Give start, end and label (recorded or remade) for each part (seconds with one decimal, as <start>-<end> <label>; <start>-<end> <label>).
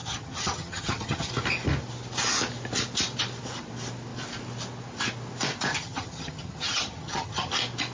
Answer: 0.0-1.3 remade; 1.3-5.7 recorded; 5.7-7.5 remade; 7.5-7.9 recorded